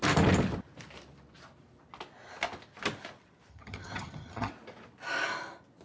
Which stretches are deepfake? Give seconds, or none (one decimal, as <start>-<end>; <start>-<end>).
3.5-4.5